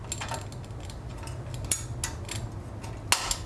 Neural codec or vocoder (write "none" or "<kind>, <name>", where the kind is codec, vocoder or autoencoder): none